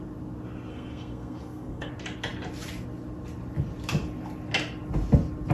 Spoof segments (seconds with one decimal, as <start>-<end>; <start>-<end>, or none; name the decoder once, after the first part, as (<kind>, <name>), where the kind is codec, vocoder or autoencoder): 0.7-1.9 (codec, SNAC)